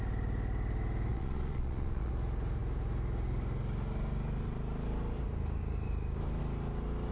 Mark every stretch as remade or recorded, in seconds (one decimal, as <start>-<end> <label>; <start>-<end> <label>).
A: 0.0-1.1 recorded; 1.1-2.1 remade; 2.1-7.1 recorded